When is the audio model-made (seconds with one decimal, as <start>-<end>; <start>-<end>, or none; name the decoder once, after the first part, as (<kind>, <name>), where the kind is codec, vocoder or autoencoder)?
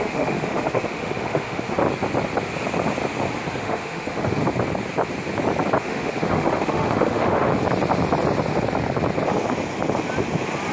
0.0-1.8 (autoencoder, DAC-VAE); 3.6-4.4; 5.8-7.5